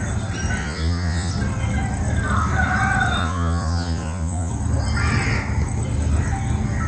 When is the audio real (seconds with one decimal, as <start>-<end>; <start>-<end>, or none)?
0.0-0.6; 1.3-3.2; 4.5-6.9